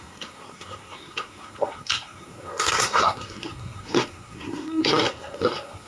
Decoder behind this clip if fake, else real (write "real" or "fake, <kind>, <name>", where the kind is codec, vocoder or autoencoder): fake, codec, SNAC